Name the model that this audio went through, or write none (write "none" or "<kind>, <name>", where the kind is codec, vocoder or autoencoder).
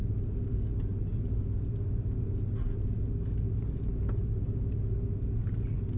none